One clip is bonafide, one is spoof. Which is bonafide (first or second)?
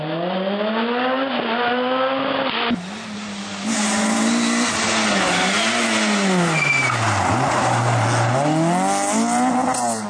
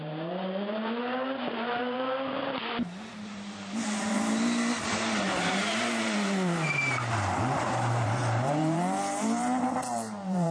first